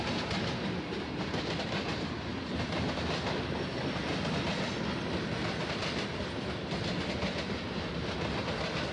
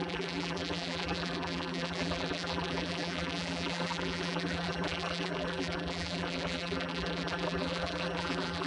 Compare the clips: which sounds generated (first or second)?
second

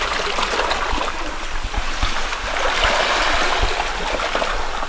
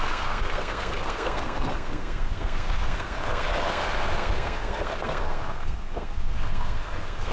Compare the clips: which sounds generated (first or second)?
second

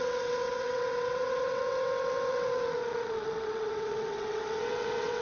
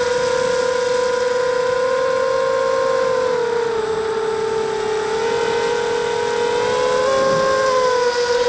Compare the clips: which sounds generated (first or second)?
first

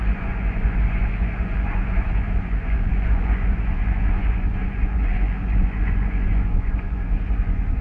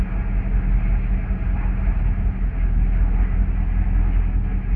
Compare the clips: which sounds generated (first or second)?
first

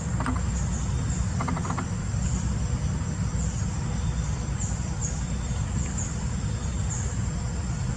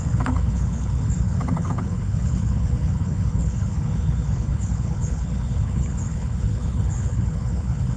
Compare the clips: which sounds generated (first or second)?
second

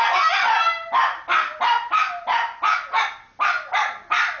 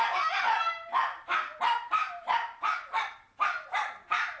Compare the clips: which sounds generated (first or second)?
second